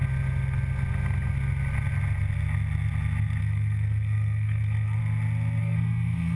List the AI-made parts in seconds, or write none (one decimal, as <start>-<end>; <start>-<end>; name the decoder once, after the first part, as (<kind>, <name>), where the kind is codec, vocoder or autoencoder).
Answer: 3.4-5.0 (codec, SNAC); 5.6-6.4

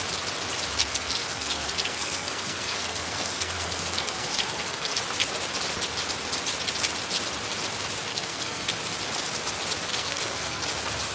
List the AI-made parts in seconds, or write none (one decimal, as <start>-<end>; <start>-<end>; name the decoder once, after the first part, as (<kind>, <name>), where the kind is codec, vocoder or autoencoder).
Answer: 0.8-5.0 (codec, SNAC); 8.1-8.7; 9.9-10.6

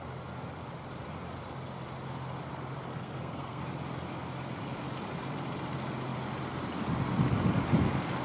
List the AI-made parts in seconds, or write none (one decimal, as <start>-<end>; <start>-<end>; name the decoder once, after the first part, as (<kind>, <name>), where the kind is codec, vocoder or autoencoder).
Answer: 2.9-3.6 (codec, SNAC)

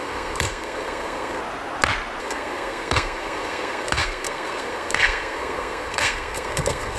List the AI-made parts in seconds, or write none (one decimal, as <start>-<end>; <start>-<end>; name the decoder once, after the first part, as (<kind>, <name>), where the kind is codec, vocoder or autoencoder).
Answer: 0.0-1.4 (codec, SNAC); 2.2-7.0